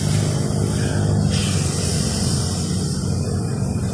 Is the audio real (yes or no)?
yes